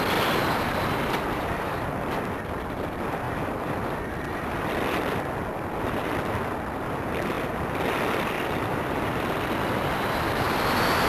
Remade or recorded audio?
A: remade